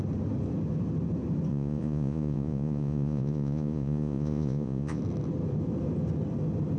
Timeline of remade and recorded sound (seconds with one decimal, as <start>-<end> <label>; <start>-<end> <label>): 0.0-1.5 recorded; 1.5-5.0 remade; 5.0-6.8 recorded